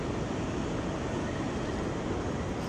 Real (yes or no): yes